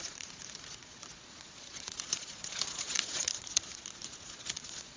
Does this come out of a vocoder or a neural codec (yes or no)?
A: yes